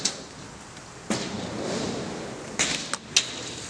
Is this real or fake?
real